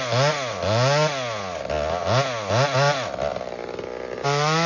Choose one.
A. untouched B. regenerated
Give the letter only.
A